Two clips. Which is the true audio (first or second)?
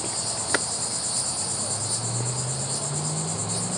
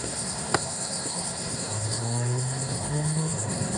first